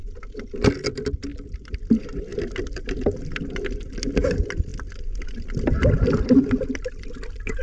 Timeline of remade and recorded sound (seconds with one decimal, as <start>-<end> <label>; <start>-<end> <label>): 0.0-1.3 recorded; 1.3-3.8 remade; 3.8-4.7 recorded; 4.7-6.7 remade; 6.7-7.6 recorded